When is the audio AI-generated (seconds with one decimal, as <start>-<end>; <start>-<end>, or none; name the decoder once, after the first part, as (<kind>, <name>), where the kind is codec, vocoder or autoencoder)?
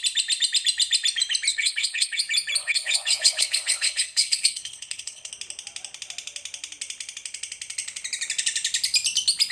1.5-2.2 (codec, HILCodec); 2.6-5.3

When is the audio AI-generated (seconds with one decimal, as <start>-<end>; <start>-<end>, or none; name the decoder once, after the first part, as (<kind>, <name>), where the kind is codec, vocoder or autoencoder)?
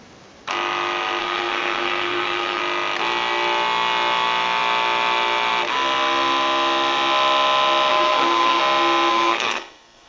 1.2-2.6 (codec, SNAC); 7.9-8.6; 9.1-10.1